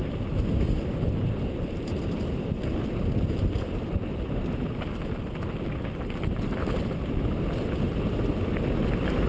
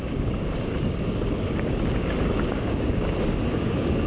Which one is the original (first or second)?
first